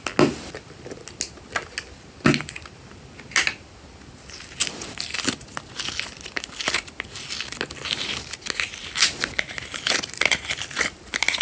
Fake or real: real